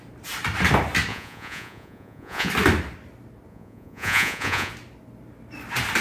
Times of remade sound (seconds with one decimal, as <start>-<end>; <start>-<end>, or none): 1.1-2.5; 3.5-4.7